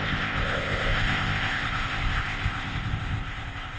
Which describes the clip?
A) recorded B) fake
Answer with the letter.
B